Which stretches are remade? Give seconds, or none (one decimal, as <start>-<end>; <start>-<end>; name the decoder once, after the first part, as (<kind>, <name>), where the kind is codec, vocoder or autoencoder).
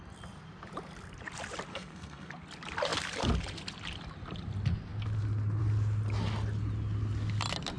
1.7-2.3 (codec, SNAC)